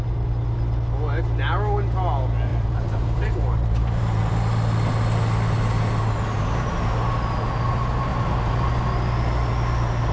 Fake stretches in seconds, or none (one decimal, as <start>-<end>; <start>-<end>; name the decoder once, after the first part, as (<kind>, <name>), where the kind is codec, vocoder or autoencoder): 2.5-4.3 (vocoder, BigVGAN v2); 8.1-8.7